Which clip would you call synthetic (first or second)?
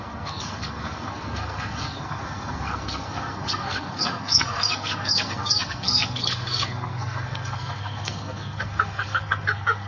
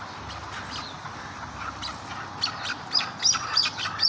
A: first